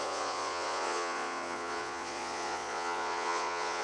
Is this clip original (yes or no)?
no